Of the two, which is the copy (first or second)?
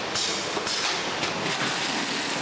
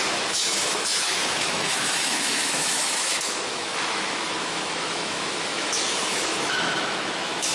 second